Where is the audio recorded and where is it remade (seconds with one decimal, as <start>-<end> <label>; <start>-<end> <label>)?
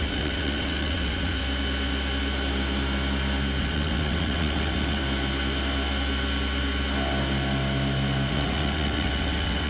0.0-1.4 remade; 1.4-3.6 recorded; 3.6-5.0 remade; 5.0-8.3 recorded; 8.3-9.7 remade